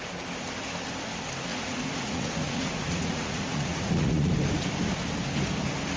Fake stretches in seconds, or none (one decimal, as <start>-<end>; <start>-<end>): 1.5-4.3